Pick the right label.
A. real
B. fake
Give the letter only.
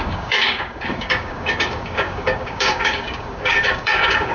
B